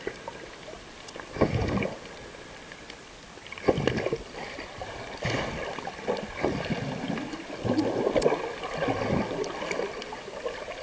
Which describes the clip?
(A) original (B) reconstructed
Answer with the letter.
A